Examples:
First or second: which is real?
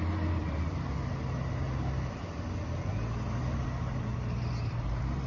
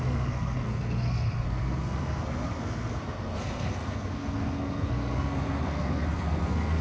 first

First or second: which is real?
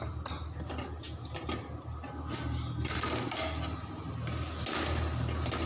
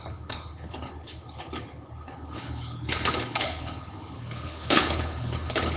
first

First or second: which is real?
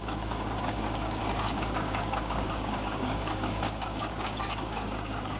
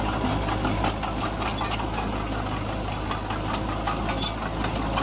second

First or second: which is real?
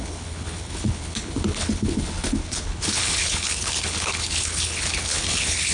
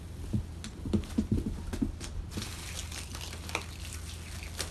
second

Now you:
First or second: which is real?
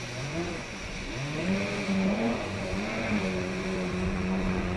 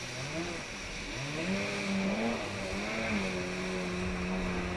second